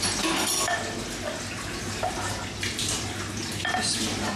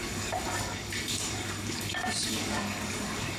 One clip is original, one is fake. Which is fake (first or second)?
second